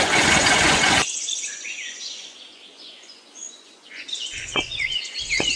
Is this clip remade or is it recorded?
remade